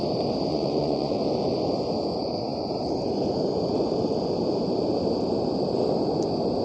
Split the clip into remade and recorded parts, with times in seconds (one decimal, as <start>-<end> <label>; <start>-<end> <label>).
0.0-0.5 recorded; 0.5-1.2 remade; 1.2-6.6 recorded